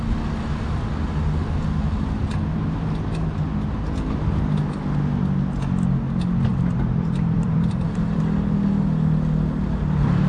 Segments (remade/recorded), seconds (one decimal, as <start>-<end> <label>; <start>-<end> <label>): 0.0-6.5 recorded; 6.5-8.2 remade; 8.2-10.3 recorded